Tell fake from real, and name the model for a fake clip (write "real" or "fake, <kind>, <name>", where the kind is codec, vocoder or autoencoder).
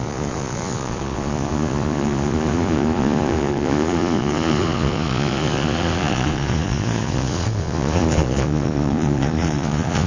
fake, vocoder, Vocos